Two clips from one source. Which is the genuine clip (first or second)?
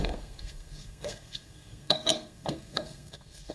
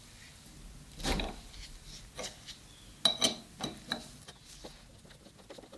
second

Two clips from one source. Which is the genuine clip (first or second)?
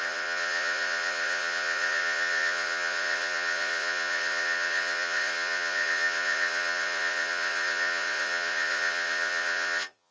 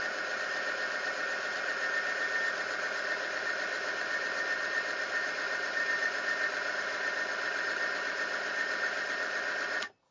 second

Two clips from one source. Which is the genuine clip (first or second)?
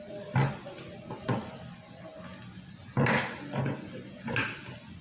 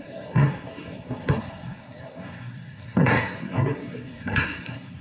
first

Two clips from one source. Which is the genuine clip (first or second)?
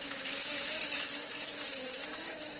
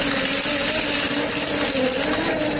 second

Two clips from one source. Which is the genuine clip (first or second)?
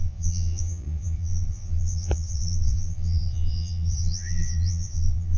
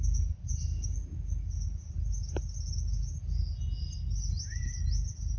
second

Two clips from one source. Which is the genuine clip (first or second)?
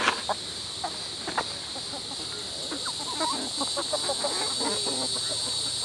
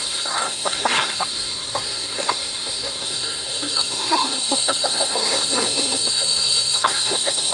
first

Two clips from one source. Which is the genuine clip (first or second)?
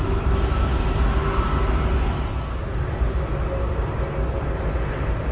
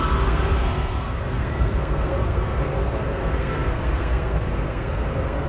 first